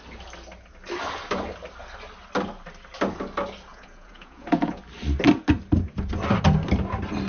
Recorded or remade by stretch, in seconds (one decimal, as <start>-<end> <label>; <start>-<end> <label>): 0.0-3.7 recorded; 3.7-4.8 remade; 4.8-7.3 recorded